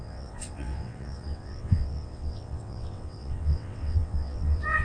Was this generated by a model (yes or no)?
yes